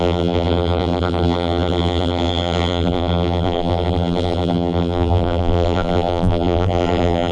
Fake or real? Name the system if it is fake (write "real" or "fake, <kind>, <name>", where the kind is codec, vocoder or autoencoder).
fake, vocoder, BigVGAN v2